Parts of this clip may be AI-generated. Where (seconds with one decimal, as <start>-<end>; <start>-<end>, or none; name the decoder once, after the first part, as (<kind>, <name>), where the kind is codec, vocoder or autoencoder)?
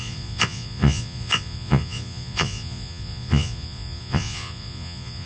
0.0-5.3 (vocoder, Vocos)